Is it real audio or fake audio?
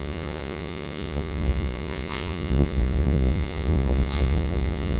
fake